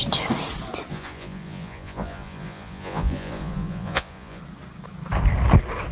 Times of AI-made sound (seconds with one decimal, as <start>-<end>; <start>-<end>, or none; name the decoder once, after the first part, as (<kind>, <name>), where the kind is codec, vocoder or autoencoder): 0.9-4.4 (vocoder, Vocos)